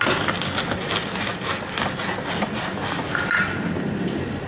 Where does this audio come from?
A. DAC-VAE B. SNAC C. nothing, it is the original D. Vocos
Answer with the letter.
C